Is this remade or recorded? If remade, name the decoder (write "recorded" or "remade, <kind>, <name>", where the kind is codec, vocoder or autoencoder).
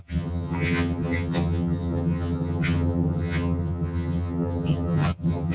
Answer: remade, vocoder, HiFi-GAN